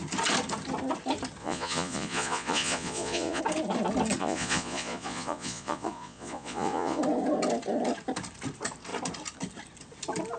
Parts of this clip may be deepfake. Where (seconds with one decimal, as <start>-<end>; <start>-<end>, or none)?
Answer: 1.4-3.4; 4.2-7.0